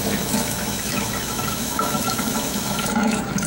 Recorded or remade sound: remade